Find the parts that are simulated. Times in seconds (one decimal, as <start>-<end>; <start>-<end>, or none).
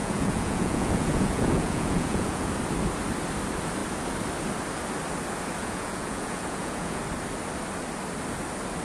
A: 0.0-2.5; 5.6-7.0